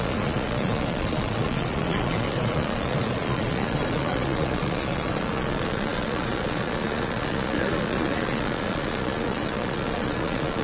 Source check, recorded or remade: remade